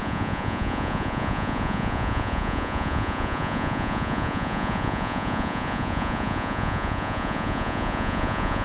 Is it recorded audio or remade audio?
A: remade